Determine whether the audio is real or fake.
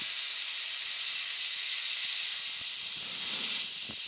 real